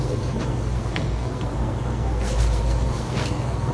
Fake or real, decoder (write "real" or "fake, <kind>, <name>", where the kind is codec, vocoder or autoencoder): fake, codec, SNAC